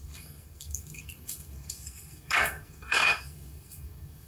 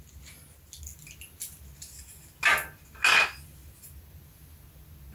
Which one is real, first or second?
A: second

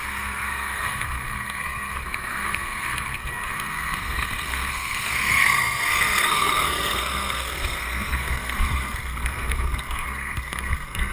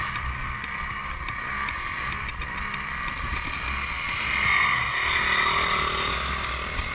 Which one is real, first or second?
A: second